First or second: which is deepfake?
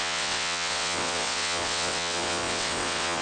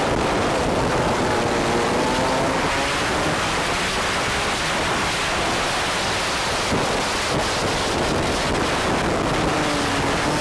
first